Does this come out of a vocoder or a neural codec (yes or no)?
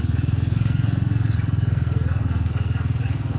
yes